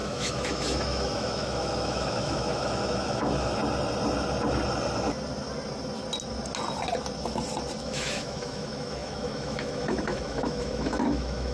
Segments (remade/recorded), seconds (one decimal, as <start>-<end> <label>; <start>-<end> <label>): 0.0-3.6 remade; 3.6-7.8 recorded; 7.8-11.5 remade